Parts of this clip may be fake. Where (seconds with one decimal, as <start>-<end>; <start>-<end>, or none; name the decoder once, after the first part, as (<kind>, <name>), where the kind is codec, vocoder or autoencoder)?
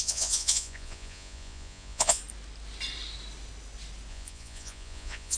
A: 0.0-2.2 (vocoder, Vocos); 4.1-5.4